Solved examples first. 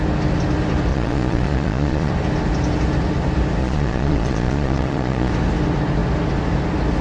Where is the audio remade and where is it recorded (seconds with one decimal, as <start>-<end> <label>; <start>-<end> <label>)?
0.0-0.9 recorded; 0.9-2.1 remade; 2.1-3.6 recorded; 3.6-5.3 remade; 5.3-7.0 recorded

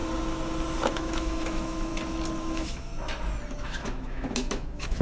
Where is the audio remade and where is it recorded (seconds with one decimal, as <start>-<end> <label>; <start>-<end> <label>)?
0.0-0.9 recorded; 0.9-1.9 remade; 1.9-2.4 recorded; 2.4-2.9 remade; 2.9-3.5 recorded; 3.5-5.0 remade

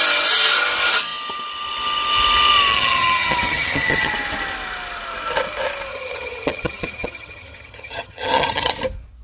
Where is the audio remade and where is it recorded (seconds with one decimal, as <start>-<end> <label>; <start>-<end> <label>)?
0.0-2.7 recorded; 2.7-4.1 remade; 4.1-5.9 recorded; 5.9-8.7 remade; 8.7-9.2 recorded

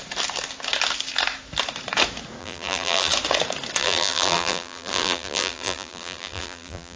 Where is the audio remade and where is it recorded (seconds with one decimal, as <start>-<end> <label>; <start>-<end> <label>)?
0.0-2.4 recorded; 2.4-3.1 remade; 3.1-3.8 recorded; 3.8-7.0 remade

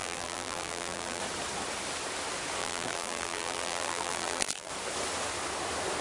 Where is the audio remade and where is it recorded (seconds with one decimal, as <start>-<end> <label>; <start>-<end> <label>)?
0.0-1.2 remade; 1.2-2.6 recorded; 2.6-4.7 remade; 4.7-6.0 recorded

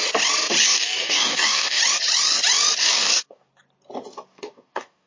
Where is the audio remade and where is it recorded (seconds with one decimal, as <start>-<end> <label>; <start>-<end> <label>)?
0.0-0.6 recorded; 0.6-1.8 remade; 1.8-2.8 recorded; 2.8-3.5 remade; 3.5-4.3 recorded; 4.3-5.1 remade

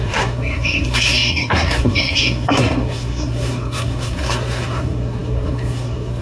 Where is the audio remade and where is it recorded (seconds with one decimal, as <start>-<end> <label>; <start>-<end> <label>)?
0.0-6.2 remade